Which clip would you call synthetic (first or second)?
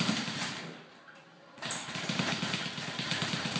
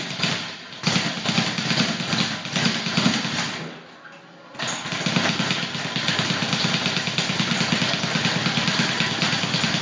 first